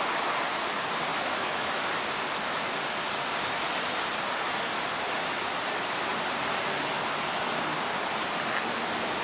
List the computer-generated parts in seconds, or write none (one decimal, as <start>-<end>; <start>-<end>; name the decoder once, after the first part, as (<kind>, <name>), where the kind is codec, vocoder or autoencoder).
1.1-1.9 (autoencoder, DAC-VAE)